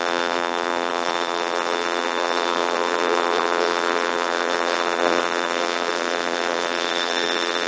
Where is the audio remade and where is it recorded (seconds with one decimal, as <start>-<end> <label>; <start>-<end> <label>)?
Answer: 0.0-7.7 remade